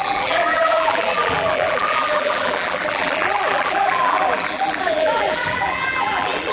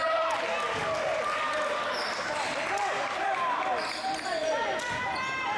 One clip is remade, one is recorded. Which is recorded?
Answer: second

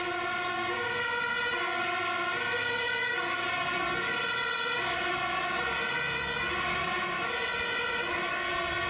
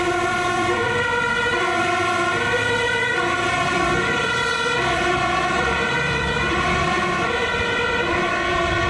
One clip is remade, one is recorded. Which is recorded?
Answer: first